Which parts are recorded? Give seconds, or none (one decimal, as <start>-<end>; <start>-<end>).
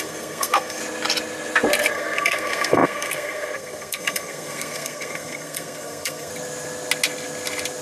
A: 0.8-1.9; 6.3-7.8